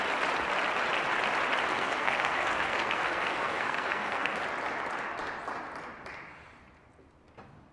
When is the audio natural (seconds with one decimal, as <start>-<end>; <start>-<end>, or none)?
0.0-1.7; 4.4-7.7